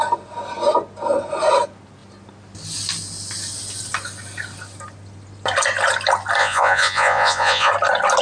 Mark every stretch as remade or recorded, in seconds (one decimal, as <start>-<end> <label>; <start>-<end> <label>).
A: 0.0-6.4 recorded; 6.4-7.7 remade; 7.7-8.2 recorded